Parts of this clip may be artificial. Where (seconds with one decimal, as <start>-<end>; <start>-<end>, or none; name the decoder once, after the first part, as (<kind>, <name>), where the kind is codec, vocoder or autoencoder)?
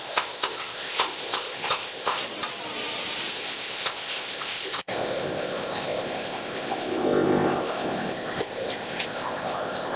0.0-2.2 (codec, ZipCodec); 3.3-10.0